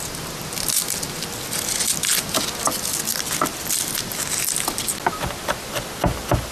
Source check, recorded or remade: recorded